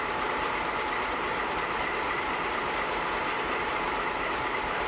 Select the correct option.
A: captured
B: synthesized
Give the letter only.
B